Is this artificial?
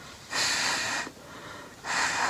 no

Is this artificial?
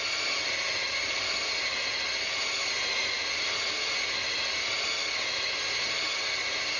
no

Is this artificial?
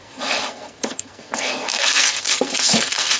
yes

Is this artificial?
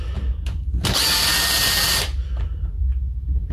no